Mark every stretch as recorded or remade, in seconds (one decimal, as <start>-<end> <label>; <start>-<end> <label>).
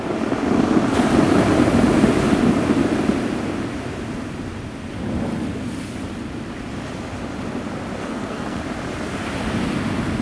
0.0-8.0 recorded; 8.0-8.6 remade; 8.6-10.2 recorded